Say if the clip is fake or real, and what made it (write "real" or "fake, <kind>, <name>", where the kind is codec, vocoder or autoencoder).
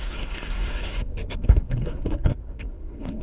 fake, codec, SNAC